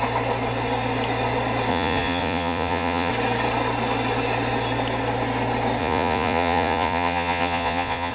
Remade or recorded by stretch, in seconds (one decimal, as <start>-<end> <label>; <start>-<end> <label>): 0.0-1.7 recorded; 1.7-3.1 remade; 3.1-5.8 recorded; 5.8-8.1 remade